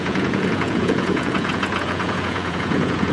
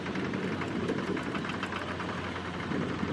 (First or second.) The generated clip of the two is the first